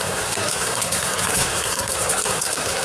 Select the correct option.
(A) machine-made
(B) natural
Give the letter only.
A